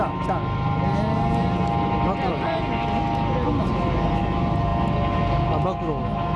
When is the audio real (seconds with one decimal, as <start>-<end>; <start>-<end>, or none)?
0.0-6.4

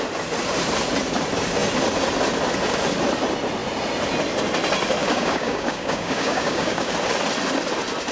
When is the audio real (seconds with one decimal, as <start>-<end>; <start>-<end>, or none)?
0.0-5.0; 6.9-8.1

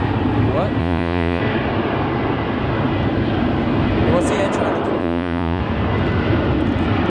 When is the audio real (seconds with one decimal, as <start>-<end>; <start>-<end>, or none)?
0.0-0.8; 1.4-5.0; 5.6-7.1

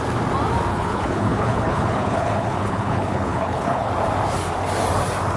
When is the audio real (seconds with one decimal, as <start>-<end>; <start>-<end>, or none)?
0.0-0.7; 3.9-5.4

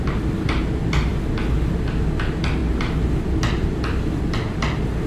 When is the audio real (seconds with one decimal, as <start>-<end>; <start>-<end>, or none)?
0.0-5.1